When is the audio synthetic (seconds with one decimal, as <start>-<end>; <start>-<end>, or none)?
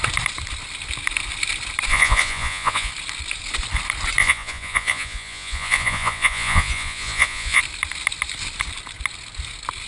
1.9-2.9; 4.2-7.6